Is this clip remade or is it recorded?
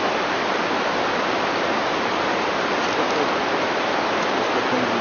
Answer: recorded